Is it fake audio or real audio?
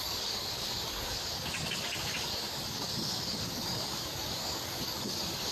fake